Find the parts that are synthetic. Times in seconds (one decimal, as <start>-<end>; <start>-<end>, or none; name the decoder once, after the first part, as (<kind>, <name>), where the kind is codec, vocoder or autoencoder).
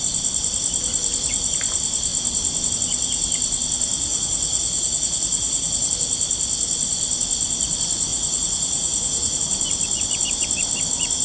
4.1-5.9 (vocoder, Vocos); 8.1-9.4